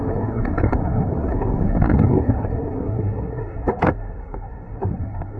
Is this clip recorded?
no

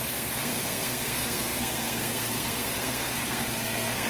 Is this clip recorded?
no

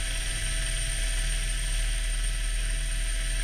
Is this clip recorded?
yes